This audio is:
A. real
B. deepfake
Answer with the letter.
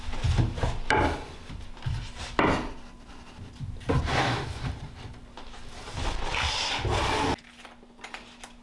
A